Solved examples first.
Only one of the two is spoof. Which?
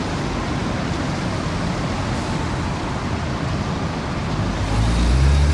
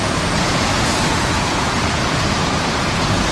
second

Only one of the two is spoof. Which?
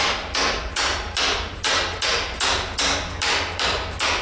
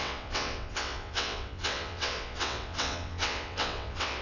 second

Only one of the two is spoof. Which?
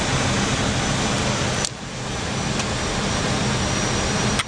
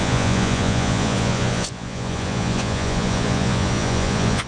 second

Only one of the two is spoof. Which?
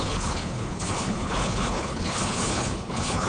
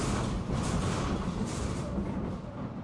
first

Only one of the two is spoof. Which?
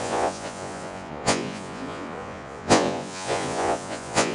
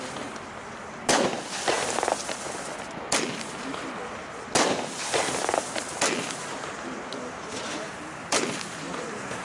first